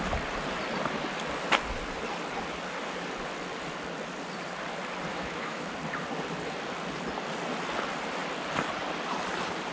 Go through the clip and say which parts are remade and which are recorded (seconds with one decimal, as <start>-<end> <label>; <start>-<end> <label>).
0.0-5.1 recorded; 5.1-5.7 remade; 5.7-9.7 recorded